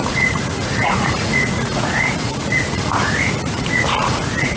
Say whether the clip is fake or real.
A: fake